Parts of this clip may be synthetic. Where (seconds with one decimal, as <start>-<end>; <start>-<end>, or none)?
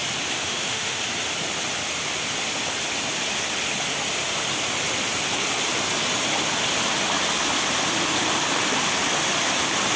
0.4-1.0